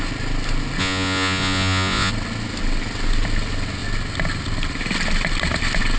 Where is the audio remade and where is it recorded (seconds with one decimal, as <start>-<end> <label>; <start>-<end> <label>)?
0.0-0.8 recorded; 0.8-2.1 remade; 2.1-6.0 recorded